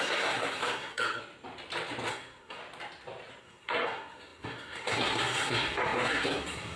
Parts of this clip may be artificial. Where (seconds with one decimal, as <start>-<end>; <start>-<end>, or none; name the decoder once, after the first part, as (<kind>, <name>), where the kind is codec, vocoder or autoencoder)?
0.0-1.2 (codec, SNAC); 2.1-2.6; 3.4-6.8